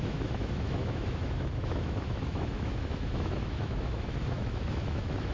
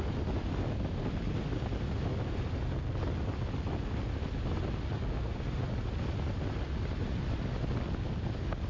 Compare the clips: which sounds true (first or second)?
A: second